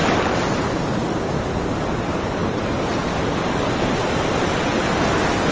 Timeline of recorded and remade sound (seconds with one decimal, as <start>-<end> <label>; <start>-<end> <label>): 0.0-2.4 recorded; 2.4-3.3 remade; 3.3-4.0 recorded; 4.0-4.6 remade; 4.6-5.5 recorded